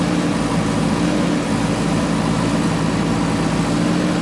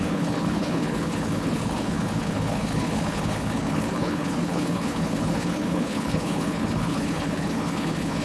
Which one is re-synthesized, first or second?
second